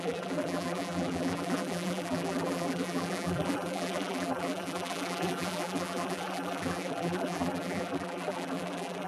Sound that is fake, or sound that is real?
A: fake